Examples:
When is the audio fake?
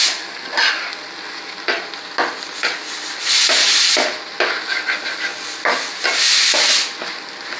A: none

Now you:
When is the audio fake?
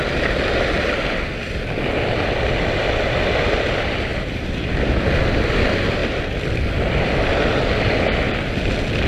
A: none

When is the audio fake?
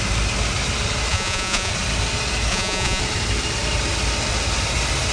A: 1.1-1.7 (vocoder, Vocos); 2.5-3.0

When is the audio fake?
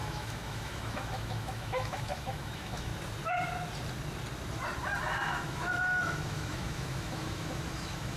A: 0.0-2.9 (autoencoder, DAC-VAE); 5.0-8.2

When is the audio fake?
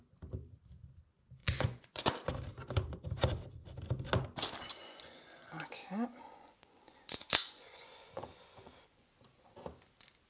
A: 1.4-2.1 (vocoder, Vocos); 4.8-9.1